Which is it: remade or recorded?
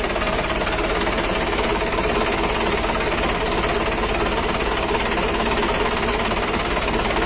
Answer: recorded